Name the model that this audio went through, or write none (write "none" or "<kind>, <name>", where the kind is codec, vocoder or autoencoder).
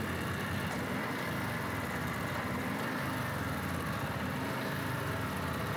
none